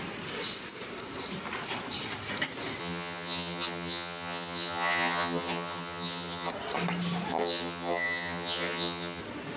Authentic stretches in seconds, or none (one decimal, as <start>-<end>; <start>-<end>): 0.0-2.8; 6.5-7.3; 9.2-9.6